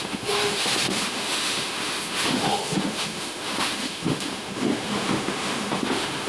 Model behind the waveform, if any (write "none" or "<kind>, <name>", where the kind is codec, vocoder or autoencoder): autoencoder, DAC-VAE